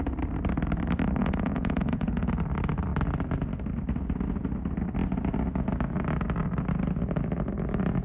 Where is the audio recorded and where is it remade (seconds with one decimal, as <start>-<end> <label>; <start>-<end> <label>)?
0.0-1.2 recorded; 1.2-2.3 remade; 2.3-8.0 recorded